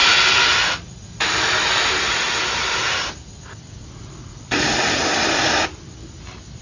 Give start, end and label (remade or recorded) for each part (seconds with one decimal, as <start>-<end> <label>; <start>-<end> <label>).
0.0-6.6 recorded